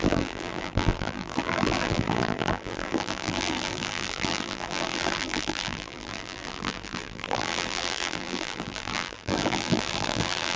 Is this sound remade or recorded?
remade